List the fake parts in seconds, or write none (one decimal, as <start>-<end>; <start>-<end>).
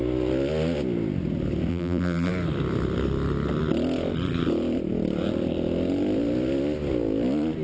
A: 1.7-2.3